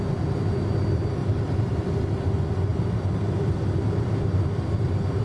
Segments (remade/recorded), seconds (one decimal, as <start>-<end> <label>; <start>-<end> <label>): 0.0-5.2 recorded